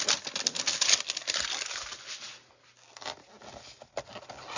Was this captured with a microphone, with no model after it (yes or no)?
yes